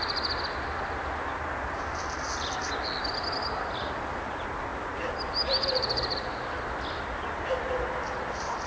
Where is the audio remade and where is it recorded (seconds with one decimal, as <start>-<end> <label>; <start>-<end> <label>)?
0.0-8.7 recorded